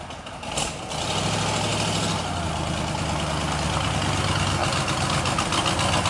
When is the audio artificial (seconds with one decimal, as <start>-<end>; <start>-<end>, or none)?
none